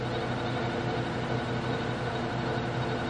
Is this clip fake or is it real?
real